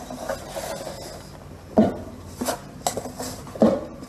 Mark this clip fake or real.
real